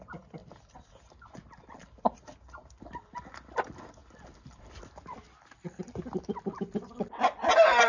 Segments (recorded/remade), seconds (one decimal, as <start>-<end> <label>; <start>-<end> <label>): 0.0-7.9 recorded